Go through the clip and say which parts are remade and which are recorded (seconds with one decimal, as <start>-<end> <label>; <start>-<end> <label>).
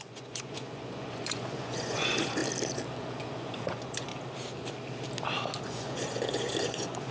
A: 0.0-2.4 remade; 2.4-2.9 recorded; 2.9-4.1 remade; 4.1-5.6 recorded; 5.6-7.1 remade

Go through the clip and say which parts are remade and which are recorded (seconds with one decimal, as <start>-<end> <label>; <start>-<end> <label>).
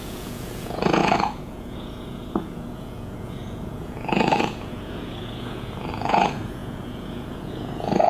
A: 0.0-8.1 remade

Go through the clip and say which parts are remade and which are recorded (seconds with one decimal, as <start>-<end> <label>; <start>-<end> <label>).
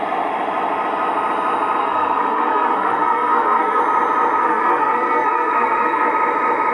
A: 0.0-1.8 recorded; 1.8-3.8 remade; 3.8-4.4 recorded; 4.4-6.1 remade; 6.1-6.7 recorded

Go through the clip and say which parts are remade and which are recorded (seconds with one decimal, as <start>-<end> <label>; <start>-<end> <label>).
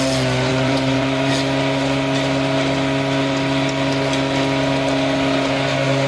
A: 0.0-0.5 recorded; 0.5-1.3 remade; 1.3-6.1 recorded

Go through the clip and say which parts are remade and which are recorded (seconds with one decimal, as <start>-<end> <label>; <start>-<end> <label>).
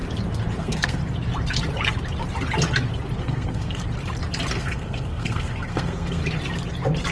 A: 0.0-0.6 recorded; 0.6-1.0 remade; 1.0-3.2 recorded; 3.2-3.8 remade; 3.8-4.5 recorded; 4.5-6.2 remade; 6.2-7.1 recorded